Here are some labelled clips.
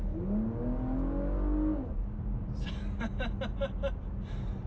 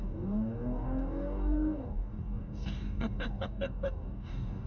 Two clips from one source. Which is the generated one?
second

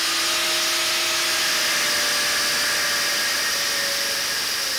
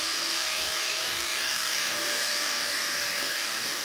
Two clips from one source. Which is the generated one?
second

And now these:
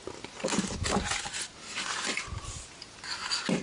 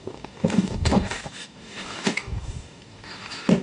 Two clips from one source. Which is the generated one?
second